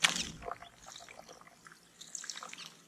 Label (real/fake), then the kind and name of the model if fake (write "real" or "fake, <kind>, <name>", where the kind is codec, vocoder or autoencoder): real